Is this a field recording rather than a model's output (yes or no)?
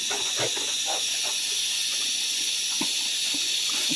no